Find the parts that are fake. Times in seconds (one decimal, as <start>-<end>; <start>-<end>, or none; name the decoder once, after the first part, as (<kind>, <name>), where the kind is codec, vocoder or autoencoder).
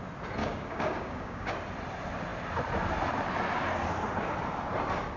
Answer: 0.4-1.5 (codec, DAC)